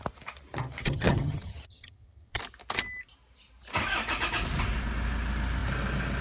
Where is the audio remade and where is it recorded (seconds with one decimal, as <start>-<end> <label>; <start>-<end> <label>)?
0.0-0.8 recorded; 0.8-2.4 remade; 2.4-6.2 recorded